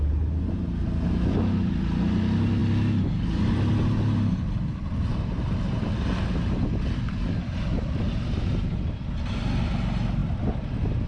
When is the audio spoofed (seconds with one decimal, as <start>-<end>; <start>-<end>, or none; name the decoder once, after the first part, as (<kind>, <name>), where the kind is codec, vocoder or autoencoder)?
none